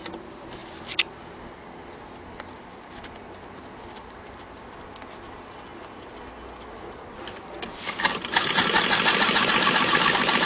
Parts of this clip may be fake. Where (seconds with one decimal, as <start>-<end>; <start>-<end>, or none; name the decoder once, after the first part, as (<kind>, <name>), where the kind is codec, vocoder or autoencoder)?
none